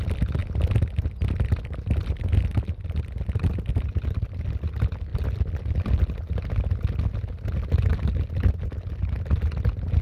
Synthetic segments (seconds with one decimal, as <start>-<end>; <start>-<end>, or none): 7.9-9.4